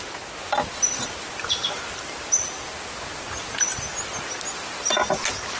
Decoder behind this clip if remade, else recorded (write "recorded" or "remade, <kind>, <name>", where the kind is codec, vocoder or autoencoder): recorded